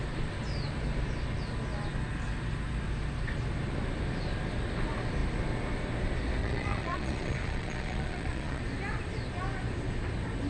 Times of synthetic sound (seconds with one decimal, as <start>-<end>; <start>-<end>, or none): 6.4-8.6